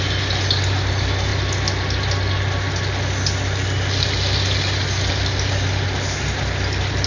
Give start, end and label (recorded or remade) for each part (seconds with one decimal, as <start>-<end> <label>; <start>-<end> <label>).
0.0-7.1 recorded